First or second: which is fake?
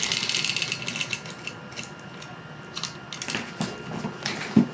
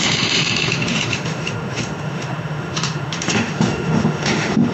second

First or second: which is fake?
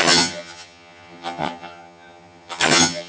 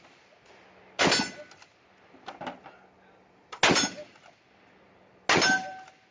first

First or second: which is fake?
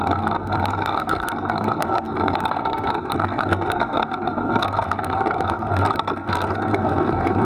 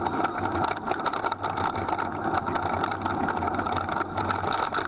first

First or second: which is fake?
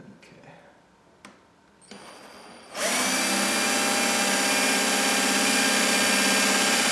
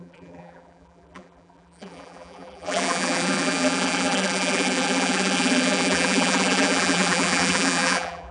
second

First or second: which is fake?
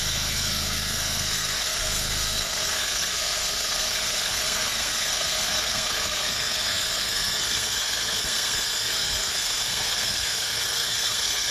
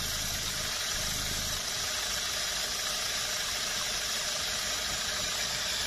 first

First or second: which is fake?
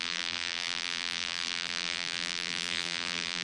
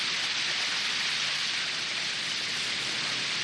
first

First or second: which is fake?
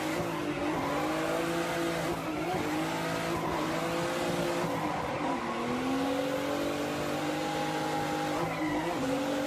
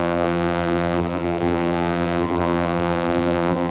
second